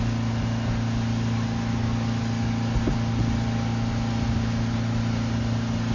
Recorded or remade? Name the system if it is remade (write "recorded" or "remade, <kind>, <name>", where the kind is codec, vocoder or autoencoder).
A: recorded